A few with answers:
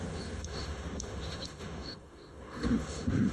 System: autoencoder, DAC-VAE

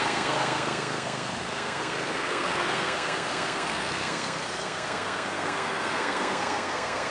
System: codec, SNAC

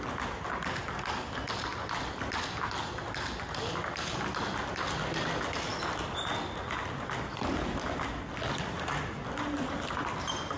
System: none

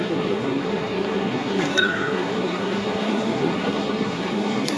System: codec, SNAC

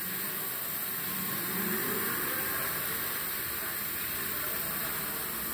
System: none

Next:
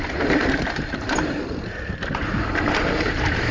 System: vocoder, BigVGAN v2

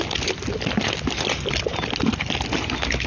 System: none